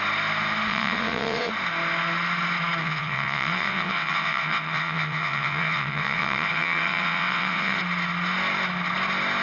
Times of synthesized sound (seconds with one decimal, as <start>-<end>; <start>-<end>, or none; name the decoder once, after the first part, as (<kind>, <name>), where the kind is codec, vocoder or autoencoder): 0.7-1.5 (vocoder, WaveNeXt); 2.8-7.8